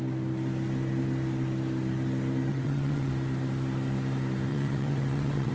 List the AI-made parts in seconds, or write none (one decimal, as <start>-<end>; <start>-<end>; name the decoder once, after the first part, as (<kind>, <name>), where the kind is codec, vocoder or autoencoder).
2.5-3.1 (vocoder, WaveNeXt); 4.5-5.5